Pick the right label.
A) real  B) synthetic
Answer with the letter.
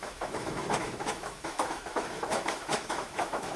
B